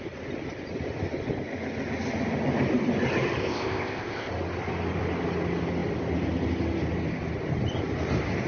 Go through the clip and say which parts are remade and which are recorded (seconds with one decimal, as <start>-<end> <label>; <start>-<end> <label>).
0.0-3.4 recorded; 3.4-4.3 remade; 4.3-8.5 recorded